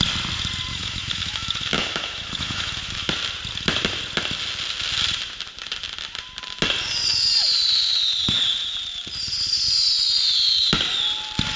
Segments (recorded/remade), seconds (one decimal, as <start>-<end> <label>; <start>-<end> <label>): 0.0-0.7 recorded; 0.7-3.1 remade; 3.1-11.6 recorded